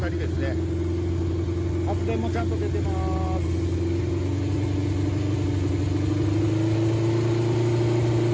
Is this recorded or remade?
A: recorded